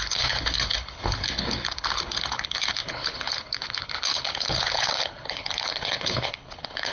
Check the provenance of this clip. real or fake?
fake